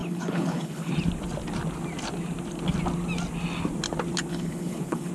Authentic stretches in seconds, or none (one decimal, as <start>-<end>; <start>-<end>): 0.9-4.3